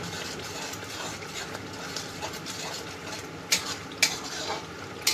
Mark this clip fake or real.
real